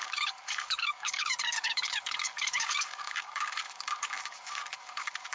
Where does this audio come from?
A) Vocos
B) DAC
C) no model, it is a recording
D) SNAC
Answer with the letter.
B